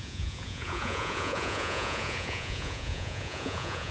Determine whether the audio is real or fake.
fake